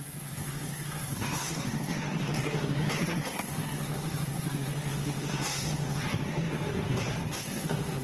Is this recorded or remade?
remade